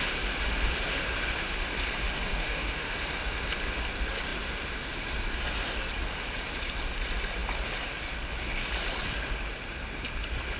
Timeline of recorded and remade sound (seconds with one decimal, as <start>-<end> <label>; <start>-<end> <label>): 0.0-2.3 recorded; 2.3-3.0 remade; 3.0-10.6 recorded